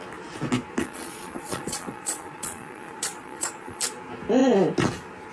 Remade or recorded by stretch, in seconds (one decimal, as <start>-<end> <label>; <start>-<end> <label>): 0.0-0.8 recorded; 0.8-3.8 remade; 3.8-5.3 recorded